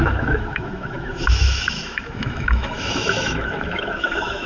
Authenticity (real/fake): fake